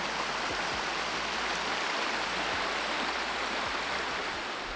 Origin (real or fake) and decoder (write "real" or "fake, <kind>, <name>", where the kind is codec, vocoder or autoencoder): fake, vocoder, BigVGAN v2